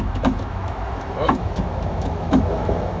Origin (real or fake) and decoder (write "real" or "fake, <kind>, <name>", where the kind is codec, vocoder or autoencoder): fake, autoencoder, DAC-VAE